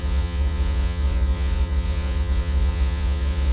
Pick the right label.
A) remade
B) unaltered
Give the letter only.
A